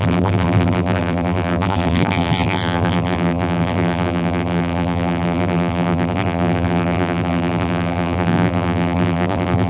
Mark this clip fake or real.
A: fake